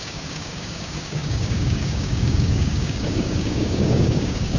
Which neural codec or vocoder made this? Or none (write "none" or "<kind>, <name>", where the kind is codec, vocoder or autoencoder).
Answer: codec, DAC